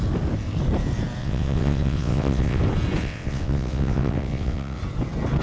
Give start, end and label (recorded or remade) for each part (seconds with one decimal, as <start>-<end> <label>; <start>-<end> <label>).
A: 0.0-1.2 recorded; 1.2-2.6 remade; 2.6-3.0 recorded; 3.0-4.8 remade; 4.8-5.4 recorded